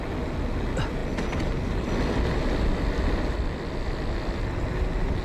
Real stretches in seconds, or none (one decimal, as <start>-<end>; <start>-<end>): 0.0-5.2